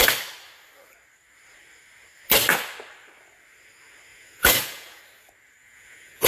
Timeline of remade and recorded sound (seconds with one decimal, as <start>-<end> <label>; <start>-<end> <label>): 0.0-4.1 recorded; 4.1-5.0 remade; 5.0-5.6 recorded; 5.6-6.3 remade